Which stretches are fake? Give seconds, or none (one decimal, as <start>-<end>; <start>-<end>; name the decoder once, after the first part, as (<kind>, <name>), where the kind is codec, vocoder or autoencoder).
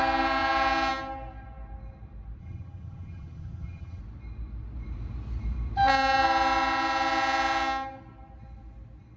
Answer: 2.4-4.0 (vocoder, HiFi-GAN)